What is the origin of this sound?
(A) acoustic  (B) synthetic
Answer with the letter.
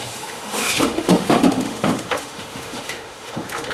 B